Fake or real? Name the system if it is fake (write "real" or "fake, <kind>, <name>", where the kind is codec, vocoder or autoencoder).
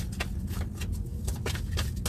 real